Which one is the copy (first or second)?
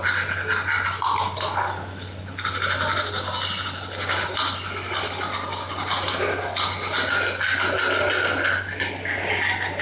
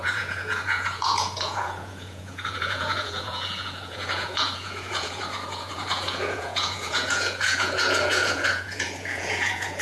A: second